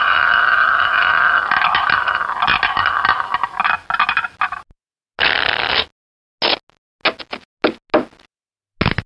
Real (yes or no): yes